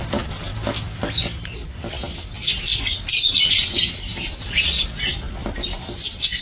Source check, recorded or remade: recorded